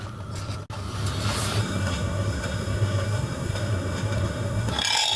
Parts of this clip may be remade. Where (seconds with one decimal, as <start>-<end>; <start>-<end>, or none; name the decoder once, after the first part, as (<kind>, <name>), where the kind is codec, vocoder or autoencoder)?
1.6-4.7 (codec, SNAC)